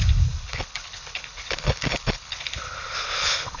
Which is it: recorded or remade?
remade